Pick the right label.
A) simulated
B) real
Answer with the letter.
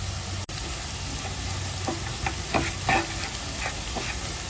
B